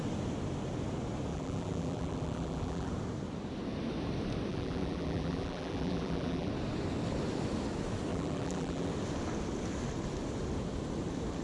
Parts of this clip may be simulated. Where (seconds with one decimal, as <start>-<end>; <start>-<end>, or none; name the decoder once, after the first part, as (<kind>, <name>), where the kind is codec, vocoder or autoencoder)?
1.3-2.9 (vocoder, BigVGAN v2); 4.5-6.5; 8.1-8.9

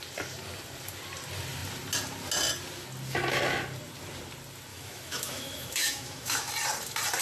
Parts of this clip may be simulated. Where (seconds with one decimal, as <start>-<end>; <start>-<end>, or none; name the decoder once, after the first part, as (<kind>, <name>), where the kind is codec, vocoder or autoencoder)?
4.7-6.5 (autoencoder, DAC-VAE)

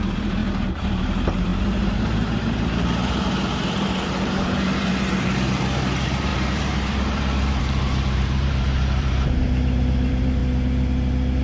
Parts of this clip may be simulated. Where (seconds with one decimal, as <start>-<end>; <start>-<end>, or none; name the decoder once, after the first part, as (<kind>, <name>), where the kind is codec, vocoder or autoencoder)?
0.0-0.4 (vocoder, BigVGAN v2); 1.0-10.4

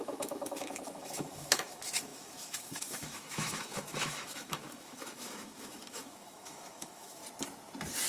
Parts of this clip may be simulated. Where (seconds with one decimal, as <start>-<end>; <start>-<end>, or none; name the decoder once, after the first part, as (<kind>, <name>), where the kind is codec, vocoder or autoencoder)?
0.0-7.2 (autoencoder, DAC-VAE)